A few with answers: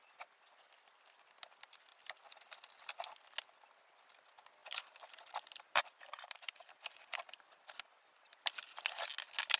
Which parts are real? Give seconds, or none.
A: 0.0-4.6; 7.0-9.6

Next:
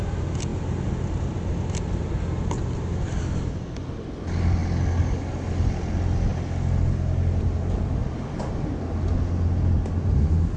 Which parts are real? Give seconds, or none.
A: 0.0-10.6